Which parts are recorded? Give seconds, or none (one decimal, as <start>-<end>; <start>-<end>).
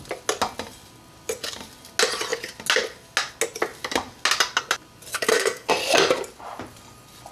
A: 0.0-5.1; 5.7-7.3